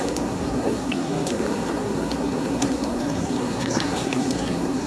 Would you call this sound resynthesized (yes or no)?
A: yes